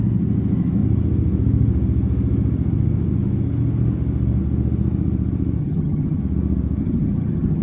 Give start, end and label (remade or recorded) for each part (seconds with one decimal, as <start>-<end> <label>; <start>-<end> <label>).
0.0-5.6 recorded; 5.6-6.2 remade; 6.2-6.8 recorded; 6.8-7.6 remade

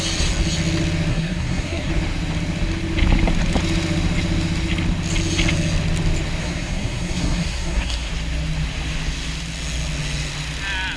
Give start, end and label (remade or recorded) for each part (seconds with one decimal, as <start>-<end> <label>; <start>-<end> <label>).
0.0-1.1 recorded; 1.1-1.9 remade; 1.9-6.4 recorded; 6.4-8.1 remade; 8.1-11.0 recorded